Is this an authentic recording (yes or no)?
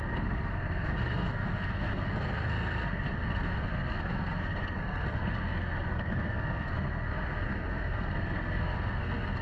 no